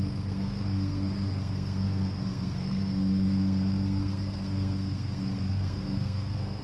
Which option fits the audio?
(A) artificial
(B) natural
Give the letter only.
A